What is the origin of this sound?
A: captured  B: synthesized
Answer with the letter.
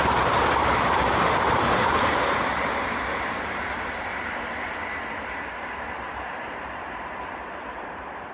B